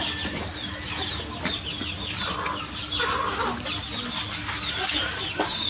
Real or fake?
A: real